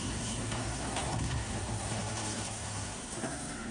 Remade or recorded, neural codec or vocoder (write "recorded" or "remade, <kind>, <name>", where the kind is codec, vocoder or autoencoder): remade, codec, SNAC